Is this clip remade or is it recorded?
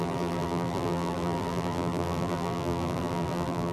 remade